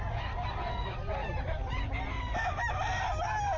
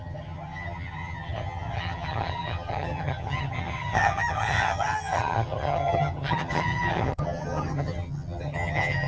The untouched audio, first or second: first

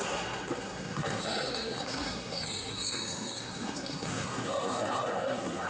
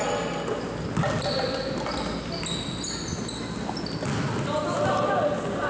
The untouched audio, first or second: second